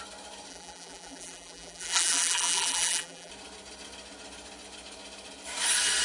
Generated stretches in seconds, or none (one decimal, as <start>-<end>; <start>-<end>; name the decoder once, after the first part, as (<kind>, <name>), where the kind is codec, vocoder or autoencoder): 0.5-3.3 (vocoder, BigVGAN v2)